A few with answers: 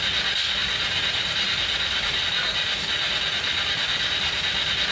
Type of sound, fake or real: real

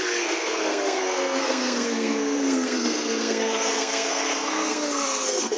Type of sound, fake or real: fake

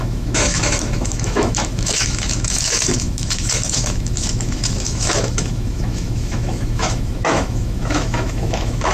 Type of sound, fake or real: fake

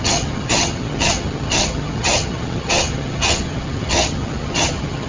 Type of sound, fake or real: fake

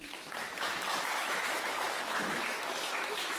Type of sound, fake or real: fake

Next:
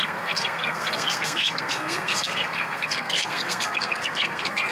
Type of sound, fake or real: fake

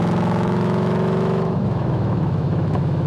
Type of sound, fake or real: fake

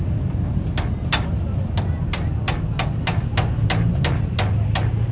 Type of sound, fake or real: real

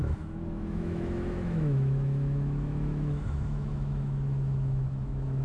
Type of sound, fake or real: fake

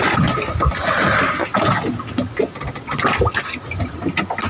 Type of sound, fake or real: real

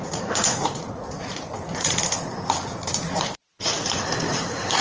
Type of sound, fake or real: fake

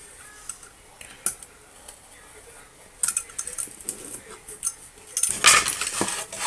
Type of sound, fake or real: real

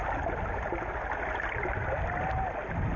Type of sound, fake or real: real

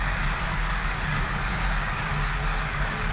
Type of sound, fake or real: fake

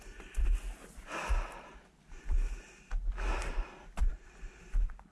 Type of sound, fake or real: real